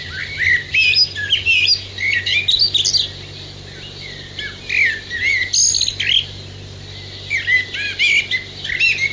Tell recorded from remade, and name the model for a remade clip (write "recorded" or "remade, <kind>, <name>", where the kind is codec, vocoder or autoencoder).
recorded